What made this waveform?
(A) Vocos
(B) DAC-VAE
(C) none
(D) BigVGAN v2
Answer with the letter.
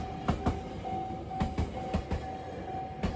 C